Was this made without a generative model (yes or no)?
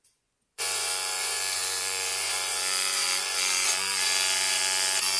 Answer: no